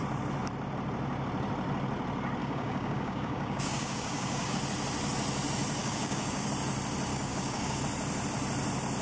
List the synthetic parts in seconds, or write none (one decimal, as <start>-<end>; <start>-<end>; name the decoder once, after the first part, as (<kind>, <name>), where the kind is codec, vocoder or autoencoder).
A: 2.4-4.6 (codec, DAC); 5.8-6.5; 7.1-7.8